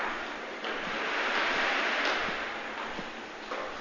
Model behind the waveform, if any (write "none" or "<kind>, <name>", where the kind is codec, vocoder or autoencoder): none